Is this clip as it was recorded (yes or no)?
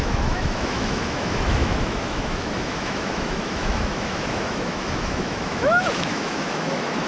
no